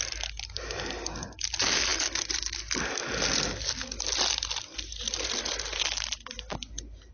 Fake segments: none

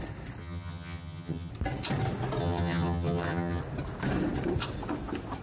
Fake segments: 0.4-1.5; 2.4-3.6

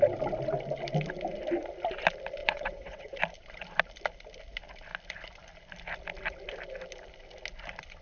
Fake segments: 2.4-3.2